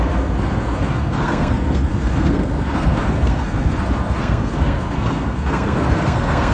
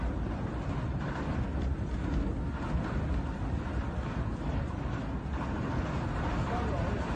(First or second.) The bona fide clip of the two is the second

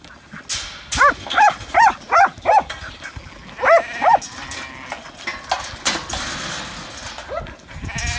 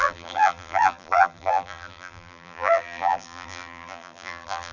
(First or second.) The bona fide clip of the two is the first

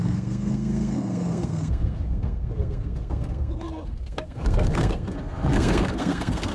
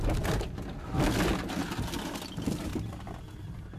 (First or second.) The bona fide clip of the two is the second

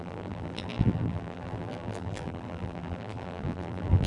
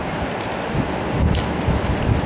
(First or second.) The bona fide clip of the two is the second